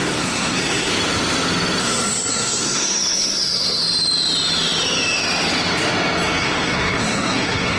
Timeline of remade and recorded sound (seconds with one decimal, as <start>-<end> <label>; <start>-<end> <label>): 0.0-0.9 remade; 0.9-1.8 recorded; 1.8-3.8 remade; 3.8-6.4 recorded; 6.4-7.8 remade